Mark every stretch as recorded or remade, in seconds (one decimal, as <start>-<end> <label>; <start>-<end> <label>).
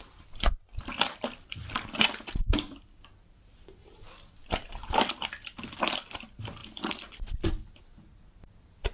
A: 0.0-8.9 recorded